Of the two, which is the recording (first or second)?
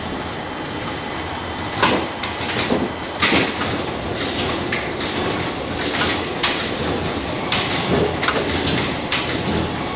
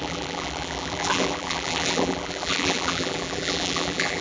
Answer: first